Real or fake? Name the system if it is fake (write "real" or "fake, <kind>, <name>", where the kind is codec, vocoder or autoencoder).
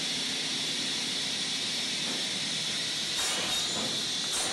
real